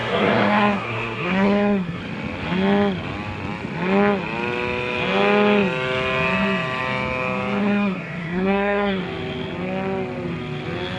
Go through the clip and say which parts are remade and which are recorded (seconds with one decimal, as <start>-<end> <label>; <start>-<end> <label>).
0.0-2.0 remade; 2.0-7.6 recorded; 7.6-9.0 remade; 9.0-11.0 recorded